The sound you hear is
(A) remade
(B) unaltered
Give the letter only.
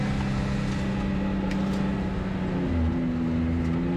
B